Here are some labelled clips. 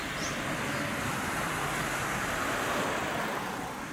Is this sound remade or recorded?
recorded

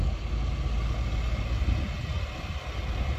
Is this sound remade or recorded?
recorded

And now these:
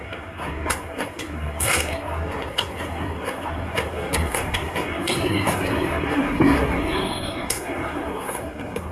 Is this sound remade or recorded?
remade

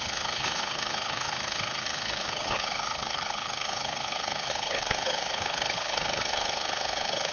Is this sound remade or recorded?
remade